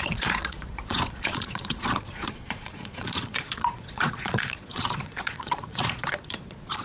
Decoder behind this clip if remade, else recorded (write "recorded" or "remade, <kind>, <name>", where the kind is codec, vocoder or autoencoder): remade, vocoder, Vocos